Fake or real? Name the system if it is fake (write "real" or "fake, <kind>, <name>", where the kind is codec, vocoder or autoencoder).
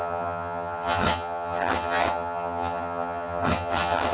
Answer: fake, vocoder, HiFi-GAN